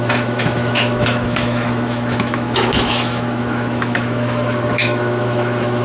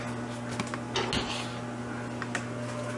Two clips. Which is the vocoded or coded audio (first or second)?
first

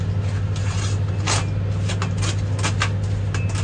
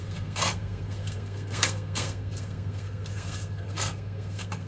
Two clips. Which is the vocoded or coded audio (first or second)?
second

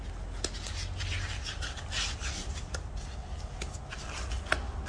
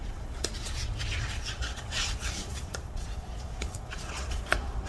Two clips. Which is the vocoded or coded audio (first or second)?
second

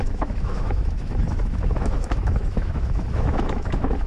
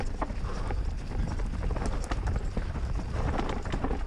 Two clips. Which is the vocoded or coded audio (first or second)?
first